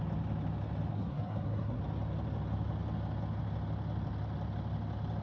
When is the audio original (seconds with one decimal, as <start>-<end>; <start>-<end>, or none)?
0.0-0.9; 1.8-5.2